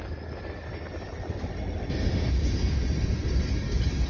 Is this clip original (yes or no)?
yes